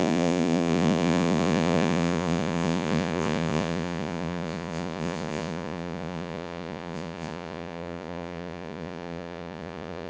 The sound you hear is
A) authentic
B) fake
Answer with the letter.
B